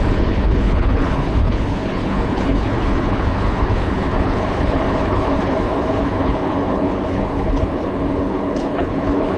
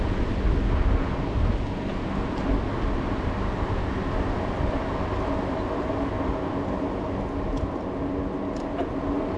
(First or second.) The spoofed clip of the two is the first